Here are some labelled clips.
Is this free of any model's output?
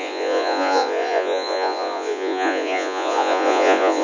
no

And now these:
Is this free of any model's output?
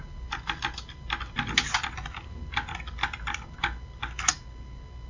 yes